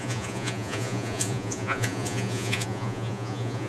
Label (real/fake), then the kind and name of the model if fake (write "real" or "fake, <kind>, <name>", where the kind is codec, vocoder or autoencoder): fake, vocoder, Vocos